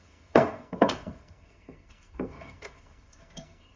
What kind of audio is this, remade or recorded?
remade